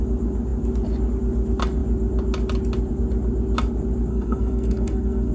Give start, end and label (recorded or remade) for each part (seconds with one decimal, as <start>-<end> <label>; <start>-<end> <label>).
0.0-4.1 recorded; 4.1-5.3 remade